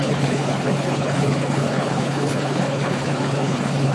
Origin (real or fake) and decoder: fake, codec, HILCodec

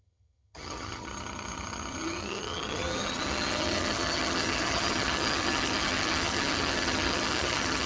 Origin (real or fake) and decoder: fake, vocoder, HiFi-GAN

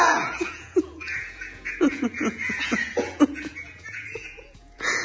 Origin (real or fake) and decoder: fake, vocoder, Vocos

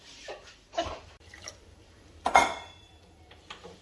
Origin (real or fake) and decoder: fake, vocoder, BigVGAN v2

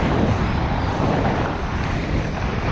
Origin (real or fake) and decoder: real